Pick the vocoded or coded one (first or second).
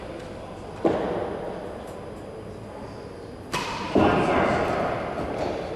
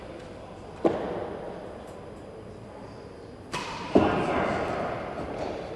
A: second